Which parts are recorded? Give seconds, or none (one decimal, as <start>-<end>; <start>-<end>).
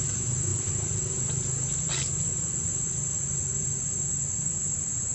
0.0-5.1